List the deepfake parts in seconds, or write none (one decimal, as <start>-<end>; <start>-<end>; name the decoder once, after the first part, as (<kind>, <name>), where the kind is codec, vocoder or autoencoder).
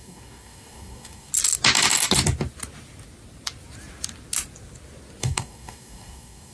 0.0-1.3 (codec, DAC); 5.2-6.5